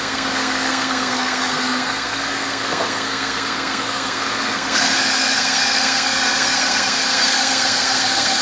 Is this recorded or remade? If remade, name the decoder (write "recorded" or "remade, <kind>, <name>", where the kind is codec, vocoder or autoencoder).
remade, codec, SNAC